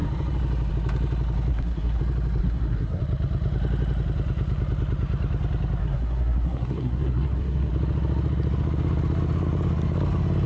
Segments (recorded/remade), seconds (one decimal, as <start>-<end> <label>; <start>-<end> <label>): 0.0-1.5 recorded; 1.5-2.0 remade; 2.0-2.4 recorded; 2.4-3.0 remade; 3.0-5.8 recorded; 5.8-7.7 remade; 7.7-10.5 recorded